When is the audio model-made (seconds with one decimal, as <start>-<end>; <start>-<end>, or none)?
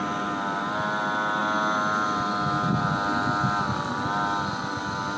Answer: none